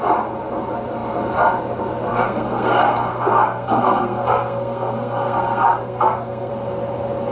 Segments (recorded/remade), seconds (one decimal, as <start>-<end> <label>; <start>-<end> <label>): 0.0-2.1 recorded; 2.1-6.5 remade; 6.5-7.3 recorded